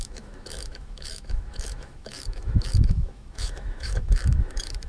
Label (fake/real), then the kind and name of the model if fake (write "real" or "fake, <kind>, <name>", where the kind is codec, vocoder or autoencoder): fake, autoencoder, DAC-VAE